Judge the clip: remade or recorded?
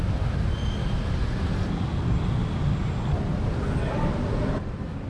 recorded